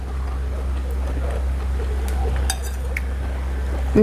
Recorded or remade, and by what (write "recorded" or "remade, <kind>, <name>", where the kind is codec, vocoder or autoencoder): recorded